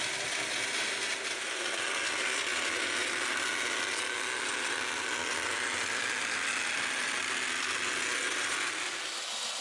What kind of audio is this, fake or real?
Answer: real